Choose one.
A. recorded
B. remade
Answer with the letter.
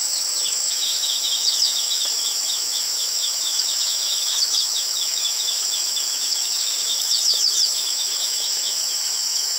B